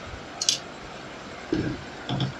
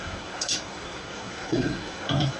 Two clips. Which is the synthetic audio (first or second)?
second